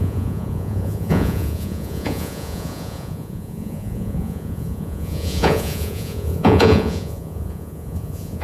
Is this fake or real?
fake